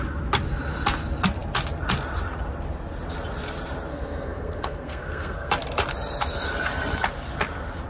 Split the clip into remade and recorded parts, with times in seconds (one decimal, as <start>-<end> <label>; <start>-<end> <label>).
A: 0.0-3.9 recorded; 3.9-5.5 remade; 5.5-7.9 recorded